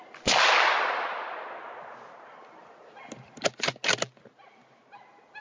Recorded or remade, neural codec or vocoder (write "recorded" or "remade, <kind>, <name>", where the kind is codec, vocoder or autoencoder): recorded